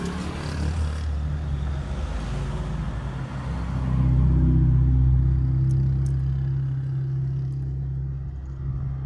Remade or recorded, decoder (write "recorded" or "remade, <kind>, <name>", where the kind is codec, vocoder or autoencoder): recorded